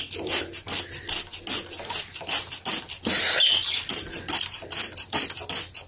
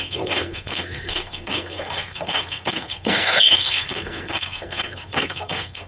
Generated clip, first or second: second